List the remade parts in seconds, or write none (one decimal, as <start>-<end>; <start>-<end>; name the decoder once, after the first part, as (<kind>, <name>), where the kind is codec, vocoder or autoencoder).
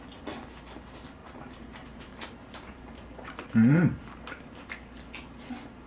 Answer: 1.2-4.7 (vocoder, BigVGAN v2)